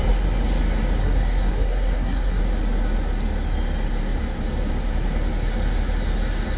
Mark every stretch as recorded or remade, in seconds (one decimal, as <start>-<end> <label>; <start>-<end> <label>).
0.0-1.0 recorded; 1.0-2.4 remade; 2.4-6.6 recorded